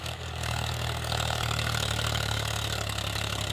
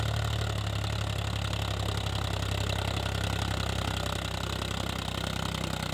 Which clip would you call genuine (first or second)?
second